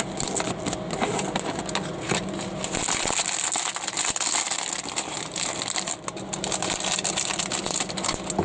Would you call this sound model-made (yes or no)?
no